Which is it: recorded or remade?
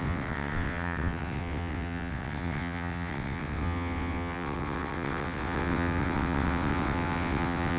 remade